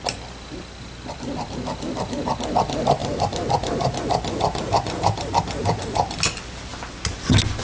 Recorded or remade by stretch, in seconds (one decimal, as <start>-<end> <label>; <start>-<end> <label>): 0.0-7.6 recorded

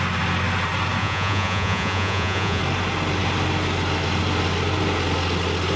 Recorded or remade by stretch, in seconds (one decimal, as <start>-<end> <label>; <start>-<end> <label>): 0.0-1.0 recorded; 1.0-2.6 remade; 2.6-5.8 recorded

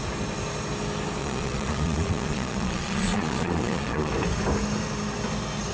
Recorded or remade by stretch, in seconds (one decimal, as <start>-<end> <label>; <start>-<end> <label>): 0.0-1.2 recorded; 1.2-4.1 remade; 4.1-5.7 recorded